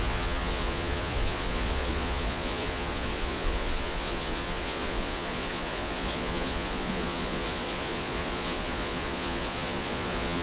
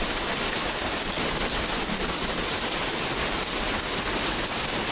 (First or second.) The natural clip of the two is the second